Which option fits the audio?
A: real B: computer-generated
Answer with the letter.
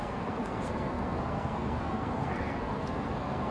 B